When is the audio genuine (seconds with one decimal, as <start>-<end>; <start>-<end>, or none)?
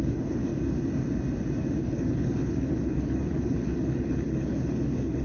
0.5-1.8